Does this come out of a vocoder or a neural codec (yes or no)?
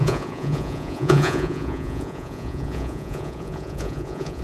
yes